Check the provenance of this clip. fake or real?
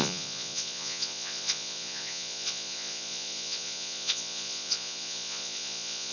fake